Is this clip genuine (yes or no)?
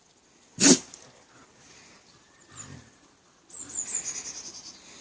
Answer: yes